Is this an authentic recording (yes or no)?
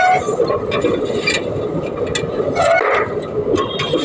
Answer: yes